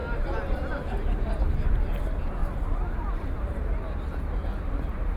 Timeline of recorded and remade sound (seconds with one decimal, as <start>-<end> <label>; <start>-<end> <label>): 0.0-1.4 remade; 1.4-2.4 recorded; 2.4-3.5 remade; 3.5-5.2 recorded